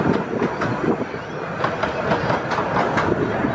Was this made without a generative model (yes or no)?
yes